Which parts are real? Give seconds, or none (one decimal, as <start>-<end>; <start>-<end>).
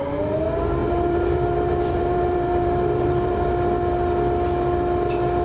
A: 0.0-0.8; 3.5-5.4